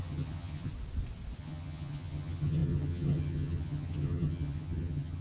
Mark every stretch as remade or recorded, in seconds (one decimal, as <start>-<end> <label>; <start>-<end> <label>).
0.0-0.7 remade; 0.7-1.4 recorded; 1.4-5.2 remade